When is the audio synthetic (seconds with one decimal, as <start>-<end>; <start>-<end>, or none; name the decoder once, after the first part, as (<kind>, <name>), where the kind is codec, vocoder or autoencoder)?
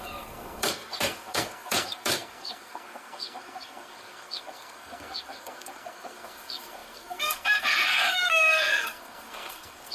0.0-9.9 (codec, SNAC)